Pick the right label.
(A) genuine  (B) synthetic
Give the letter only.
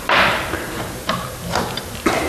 A